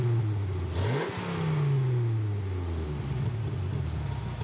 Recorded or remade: recorded